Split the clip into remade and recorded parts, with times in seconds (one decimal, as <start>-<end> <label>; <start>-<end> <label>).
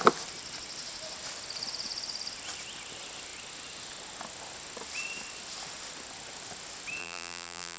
0.0-7.0 recorded; 7.0-7.8 remade